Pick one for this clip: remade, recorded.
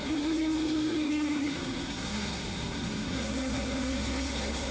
remade